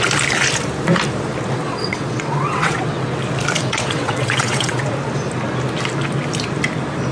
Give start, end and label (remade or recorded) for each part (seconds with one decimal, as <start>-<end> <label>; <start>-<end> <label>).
0.0-1.6 recorded; 1.6-3.2 remade; 3.2-3.6 recorded; 3.6-4.8 remade; 4.8-7.1 recorded